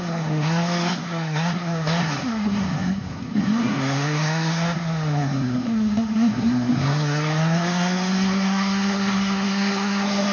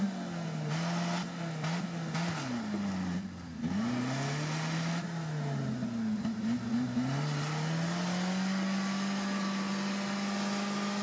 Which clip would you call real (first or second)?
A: second